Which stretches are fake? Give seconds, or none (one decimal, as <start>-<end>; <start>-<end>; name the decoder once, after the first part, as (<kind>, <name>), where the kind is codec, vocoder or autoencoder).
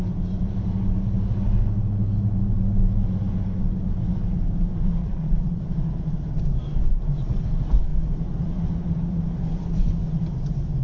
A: 5.0-5.6 (vocoder, Vocos)